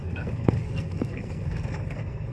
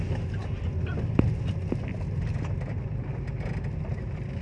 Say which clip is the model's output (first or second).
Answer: first